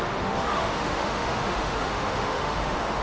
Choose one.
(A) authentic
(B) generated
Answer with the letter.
B